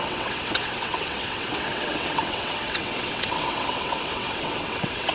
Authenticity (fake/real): fake